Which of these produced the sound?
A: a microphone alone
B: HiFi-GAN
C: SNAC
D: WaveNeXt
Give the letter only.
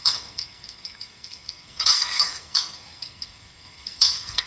C